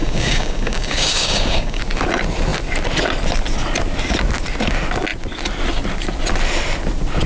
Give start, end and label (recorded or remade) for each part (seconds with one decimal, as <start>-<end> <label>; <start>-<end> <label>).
0.0-1.8 remade; 1.8-7.3 recorded

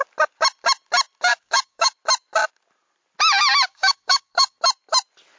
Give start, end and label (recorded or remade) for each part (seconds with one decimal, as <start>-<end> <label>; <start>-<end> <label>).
0.0-1.3 recorded; 1.3-1.9 remade; 1.9-3.7 recorded; 3.7-4.6 remade; 4.6-5.4 recorded

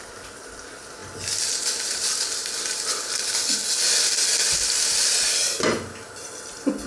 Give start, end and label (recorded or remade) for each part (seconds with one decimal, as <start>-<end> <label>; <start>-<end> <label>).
0.0-6.9 recorded